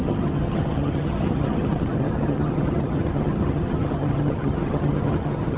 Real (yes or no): no